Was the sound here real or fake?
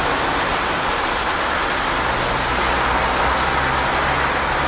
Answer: real